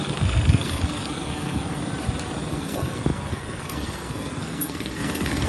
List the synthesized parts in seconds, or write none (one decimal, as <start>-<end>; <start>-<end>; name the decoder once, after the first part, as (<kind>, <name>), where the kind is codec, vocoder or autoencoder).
0.0-1.8 (codec, SNAC); 2.5-5.5